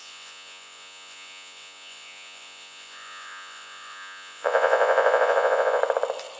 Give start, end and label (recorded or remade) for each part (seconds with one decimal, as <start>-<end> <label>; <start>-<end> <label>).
0.0-5.8 remade; 5.8-6.4 recorded